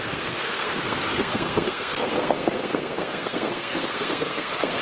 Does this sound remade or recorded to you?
remade